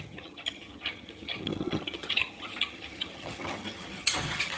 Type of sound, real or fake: fake